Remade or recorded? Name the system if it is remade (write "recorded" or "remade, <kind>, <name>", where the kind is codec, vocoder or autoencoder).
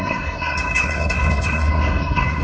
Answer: remade, codec, SNAC